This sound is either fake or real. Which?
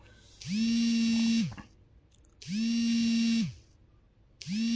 real